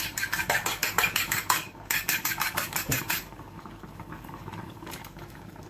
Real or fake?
fake